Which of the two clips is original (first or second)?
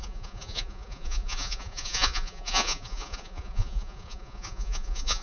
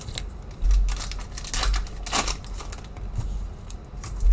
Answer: second